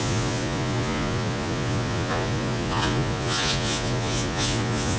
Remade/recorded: remade